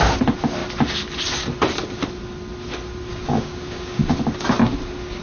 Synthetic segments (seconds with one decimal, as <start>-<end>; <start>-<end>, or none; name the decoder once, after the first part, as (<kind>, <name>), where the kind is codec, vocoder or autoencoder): 3.1-4.0 (codec, DAC)